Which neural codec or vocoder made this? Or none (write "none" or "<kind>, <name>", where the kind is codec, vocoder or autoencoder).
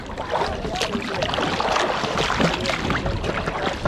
none